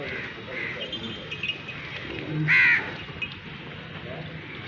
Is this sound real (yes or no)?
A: yes